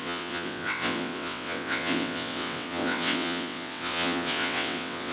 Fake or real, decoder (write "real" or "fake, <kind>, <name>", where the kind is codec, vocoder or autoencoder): fake, vocoder, WaveNeXt